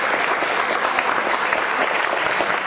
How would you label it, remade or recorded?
recorded